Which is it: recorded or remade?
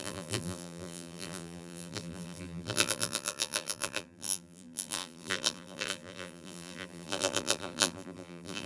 remade